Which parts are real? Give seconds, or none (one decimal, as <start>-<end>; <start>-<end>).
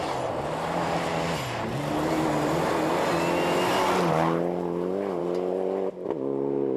0.0-6.8